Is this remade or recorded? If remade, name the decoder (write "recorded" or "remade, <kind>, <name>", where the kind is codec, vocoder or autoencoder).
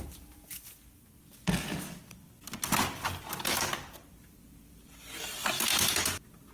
recorded